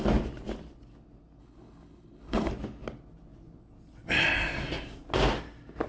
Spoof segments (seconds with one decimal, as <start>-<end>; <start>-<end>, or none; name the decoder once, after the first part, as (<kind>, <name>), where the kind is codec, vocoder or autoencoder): 1.4-2.5 (codec, HILCodec)